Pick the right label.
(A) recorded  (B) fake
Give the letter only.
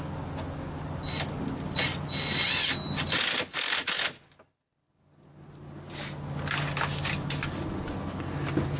A